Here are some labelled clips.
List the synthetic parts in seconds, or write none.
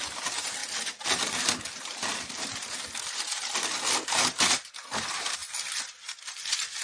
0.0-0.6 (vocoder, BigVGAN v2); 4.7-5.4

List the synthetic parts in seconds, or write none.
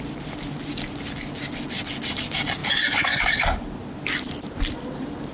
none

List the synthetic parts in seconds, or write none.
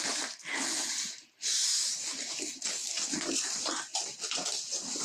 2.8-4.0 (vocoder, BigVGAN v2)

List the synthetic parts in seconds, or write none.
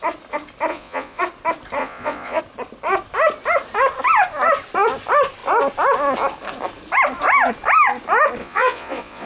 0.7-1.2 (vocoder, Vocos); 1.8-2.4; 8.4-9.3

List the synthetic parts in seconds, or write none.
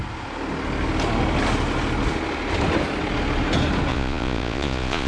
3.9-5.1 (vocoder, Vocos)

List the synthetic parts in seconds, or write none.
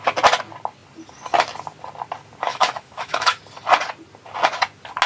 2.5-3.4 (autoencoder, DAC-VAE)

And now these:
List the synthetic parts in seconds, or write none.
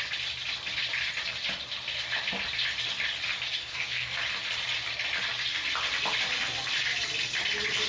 3.6-4.2 (codec, SNAC)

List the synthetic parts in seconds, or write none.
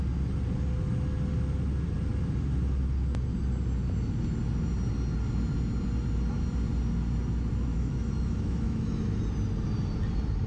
7.7-9.2 (autoencoder, DAC-VAE)